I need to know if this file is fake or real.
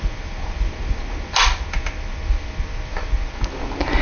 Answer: real